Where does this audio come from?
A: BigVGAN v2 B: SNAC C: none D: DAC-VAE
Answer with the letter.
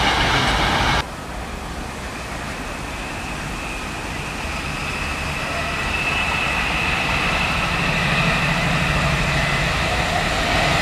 C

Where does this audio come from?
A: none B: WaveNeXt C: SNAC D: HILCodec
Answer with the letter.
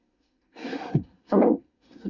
C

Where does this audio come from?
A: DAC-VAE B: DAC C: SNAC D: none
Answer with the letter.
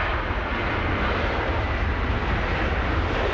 D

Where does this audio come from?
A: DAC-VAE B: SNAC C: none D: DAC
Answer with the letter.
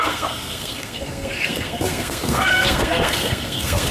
B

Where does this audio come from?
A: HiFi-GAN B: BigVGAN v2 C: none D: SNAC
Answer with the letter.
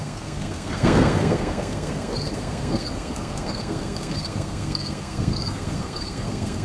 D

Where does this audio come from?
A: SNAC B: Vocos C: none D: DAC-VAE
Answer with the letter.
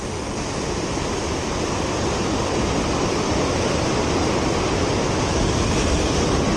C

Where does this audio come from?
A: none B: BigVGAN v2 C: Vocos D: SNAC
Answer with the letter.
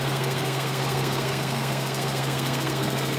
D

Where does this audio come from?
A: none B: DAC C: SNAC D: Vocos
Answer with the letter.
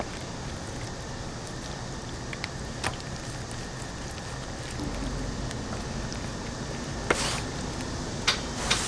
A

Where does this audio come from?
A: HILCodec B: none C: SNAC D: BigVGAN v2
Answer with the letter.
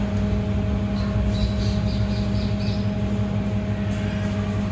B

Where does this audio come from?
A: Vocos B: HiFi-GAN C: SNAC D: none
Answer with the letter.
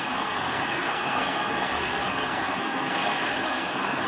C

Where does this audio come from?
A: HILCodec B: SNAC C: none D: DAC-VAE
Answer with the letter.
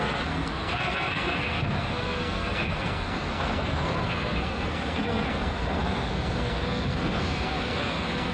B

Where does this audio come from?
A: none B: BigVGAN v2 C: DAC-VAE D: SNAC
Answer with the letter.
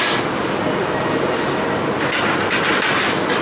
A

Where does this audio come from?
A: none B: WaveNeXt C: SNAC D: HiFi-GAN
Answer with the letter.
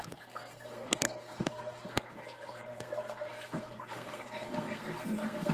C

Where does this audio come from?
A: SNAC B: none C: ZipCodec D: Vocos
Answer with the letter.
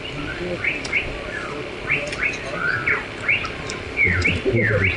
B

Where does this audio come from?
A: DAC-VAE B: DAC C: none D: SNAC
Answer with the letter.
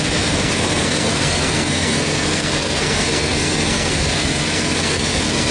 D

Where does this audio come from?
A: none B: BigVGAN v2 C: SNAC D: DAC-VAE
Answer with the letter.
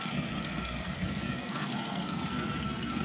C